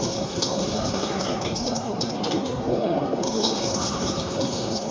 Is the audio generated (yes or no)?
yes